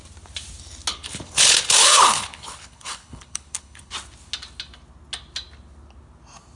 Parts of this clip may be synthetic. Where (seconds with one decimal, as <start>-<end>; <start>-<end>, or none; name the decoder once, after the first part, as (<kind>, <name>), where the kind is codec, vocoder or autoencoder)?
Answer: 0.9-3.9 (codec, HILCodec)